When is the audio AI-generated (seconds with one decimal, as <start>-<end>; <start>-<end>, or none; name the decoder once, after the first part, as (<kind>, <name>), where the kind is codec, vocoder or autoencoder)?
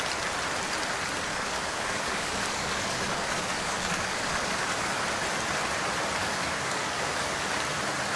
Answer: 1.3-5.0 (codec, DAC); 6.2-7.5